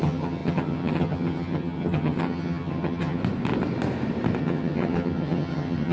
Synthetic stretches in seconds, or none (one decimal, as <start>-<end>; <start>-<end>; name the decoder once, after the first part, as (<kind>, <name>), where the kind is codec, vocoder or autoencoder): 0.0-3.2 (vocoder, HiFi-GAN); 4.4-5.9